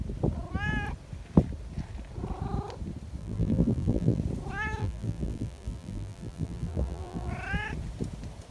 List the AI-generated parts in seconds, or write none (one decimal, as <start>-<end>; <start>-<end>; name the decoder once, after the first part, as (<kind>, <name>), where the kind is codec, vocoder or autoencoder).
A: 3.2-4.2 (vocoder, BigVGAN v2); 4.8-7.3